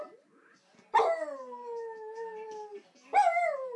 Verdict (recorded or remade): recorded